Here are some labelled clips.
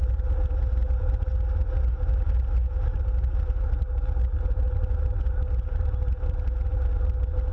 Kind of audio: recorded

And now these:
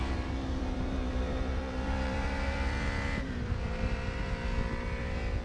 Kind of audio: remade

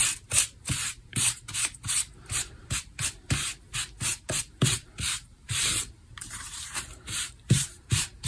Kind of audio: remade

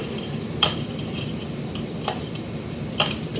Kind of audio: remade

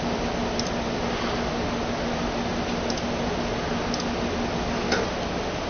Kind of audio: recorded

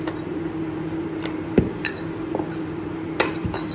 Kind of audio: remade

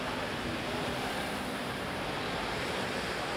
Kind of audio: recorded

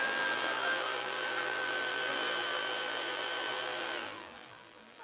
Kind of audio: remade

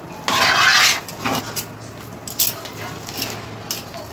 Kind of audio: recorded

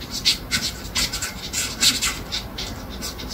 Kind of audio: recorded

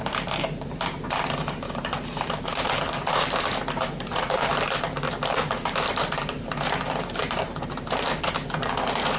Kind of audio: remade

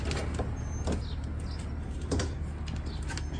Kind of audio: recorded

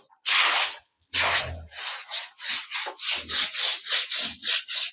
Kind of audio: recorded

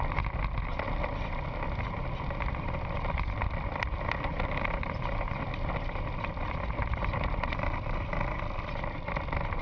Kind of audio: remade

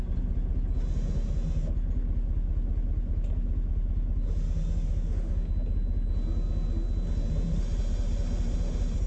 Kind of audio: recorded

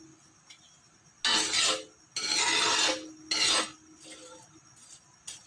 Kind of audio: recorded